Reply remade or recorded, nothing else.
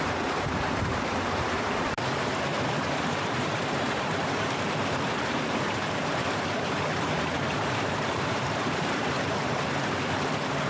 remade